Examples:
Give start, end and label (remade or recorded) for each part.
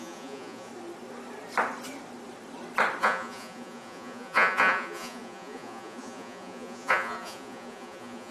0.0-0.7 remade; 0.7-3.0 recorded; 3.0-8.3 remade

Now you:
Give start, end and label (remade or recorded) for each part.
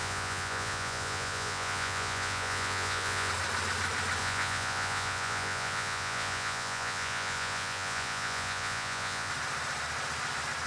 0.0-3.3 remade; 3.3-4.2 recorded; 4.2-9.3 remade; 9.3-10.7 recorded